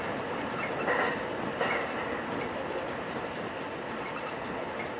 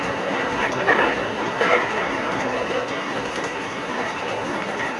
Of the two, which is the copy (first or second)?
second